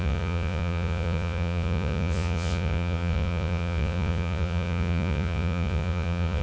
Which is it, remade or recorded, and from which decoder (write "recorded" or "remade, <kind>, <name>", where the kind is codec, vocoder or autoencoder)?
remade, vocoder, Vocos